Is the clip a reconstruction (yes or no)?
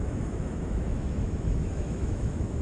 yes